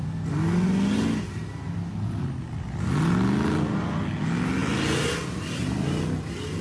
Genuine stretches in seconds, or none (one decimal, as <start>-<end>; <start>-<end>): 0.0-6.6

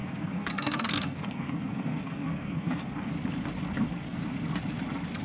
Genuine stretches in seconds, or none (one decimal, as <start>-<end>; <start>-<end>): 3.1-5.2

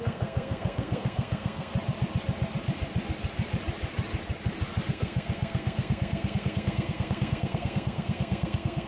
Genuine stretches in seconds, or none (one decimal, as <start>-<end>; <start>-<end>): 1.7-4.9